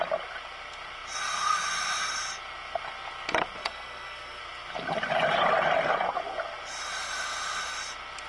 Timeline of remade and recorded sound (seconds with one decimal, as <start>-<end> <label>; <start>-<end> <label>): 0.0-3.6 recorded; 3.6-4.4 remade; 4.4-8.3 recorded